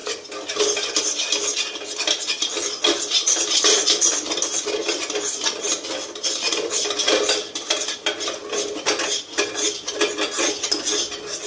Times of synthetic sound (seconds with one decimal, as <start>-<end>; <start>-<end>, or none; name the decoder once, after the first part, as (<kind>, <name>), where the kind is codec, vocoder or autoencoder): none